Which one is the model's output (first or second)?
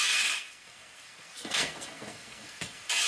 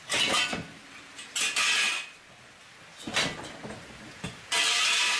first